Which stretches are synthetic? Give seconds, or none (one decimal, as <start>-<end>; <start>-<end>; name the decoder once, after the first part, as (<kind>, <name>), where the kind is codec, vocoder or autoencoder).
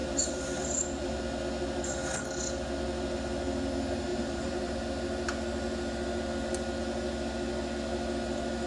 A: 0.0-1.2 (vocoder, BigVGAN v2); 4.1-4.7